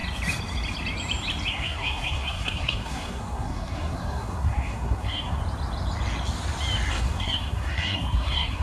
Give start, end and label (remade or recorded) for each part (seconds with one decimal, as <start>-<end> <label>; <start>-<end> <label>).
0.0-1.5 recorded; 1.5-5.4 remade; 5.4-6.9 recorded; 6.9-8.6 remade

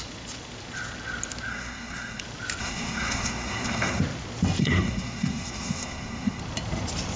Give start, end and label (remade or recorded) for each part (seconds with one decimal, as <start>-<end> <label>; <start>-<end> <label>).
0.0-1.5 recorded; 1.5-2.2 remade; 2.2-2.6 recorded; 2.6-4.0 remade; 4.0-4.6 recorded; 4.6-6.4 remade; 6.4-7.2 recorded